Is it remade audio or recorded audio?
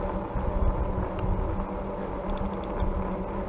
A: recorded